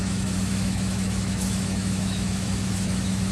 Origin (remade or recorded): remade